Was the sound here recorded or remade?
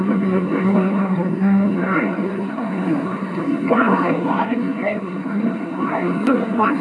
remade